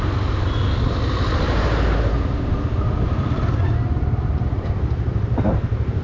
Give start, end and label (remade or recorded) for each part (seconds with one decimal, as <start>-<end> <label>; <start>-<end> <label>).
0.0-2.7 recorded; 2.7-4.7 remade; 4.7-6.0 recorded